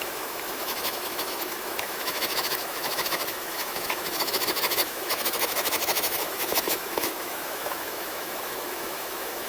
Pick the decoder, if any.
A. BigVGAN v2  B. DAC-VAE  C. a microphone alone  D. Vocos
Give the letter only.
B